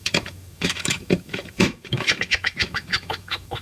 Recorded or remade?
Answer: remade